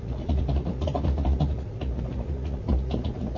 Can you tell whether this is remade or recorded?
remade